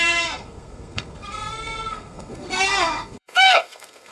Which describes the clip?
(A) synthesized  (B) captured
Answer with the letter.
A